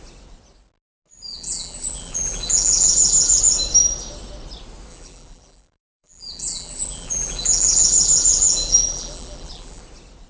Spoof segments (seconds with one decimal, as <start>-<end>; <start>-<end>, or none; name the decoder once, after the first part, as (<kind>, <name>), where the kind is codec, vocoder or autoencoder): 1.3-3.4 (vocoder, BigVGAN v2); 4.9-9.8